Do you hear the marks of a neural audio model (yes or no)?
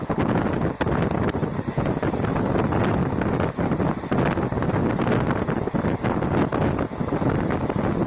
no